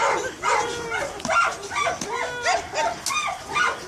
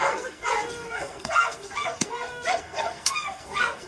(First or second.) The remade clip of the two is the second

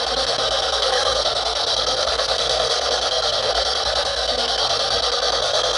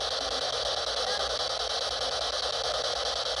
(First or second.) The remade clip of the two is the first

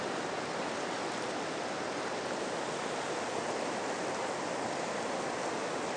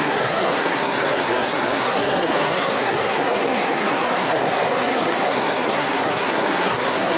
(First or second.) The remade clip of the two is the second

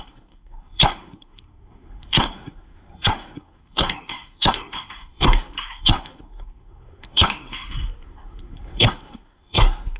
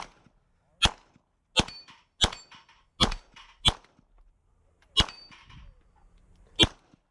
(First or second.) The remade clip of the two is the first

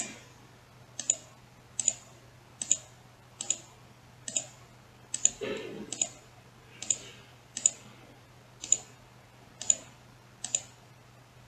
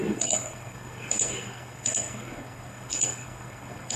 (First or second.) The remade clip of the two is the second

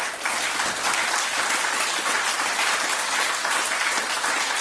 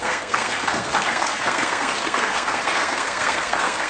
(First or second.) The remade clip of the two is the second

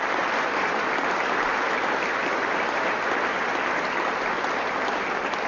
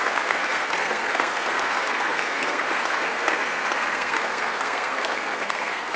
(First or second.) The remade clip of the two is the second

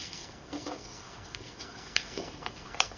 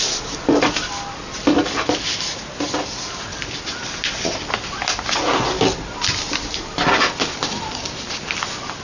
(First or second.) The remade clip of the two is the first